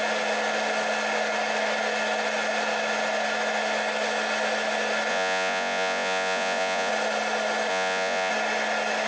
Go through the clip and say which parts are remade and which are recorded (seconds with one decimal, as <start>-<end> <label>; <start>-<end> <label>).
0.0-5.1 recorded; 5.1-6.9 remade; 6.9-7.7 recorded; 7.7-8.3 remade; 8.3-9.1 recorded